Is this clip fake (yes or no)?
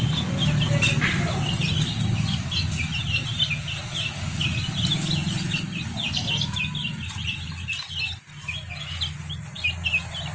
no